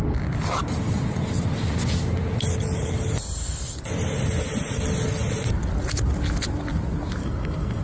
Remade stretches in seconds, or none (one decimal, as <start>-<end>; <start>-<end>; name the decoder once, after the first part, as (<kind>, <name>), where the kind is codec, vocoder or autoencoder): 7.2-7.8 (codec, SNAC)